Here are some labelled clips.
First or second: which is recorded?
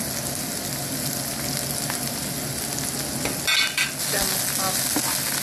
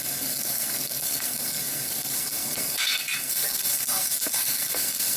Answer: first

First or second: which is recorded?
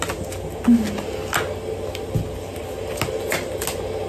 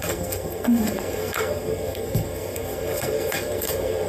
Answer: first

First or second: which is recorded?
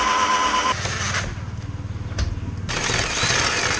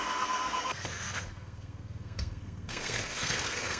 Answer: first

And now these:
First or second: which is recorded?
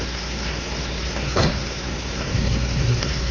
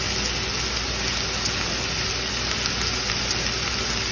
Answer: second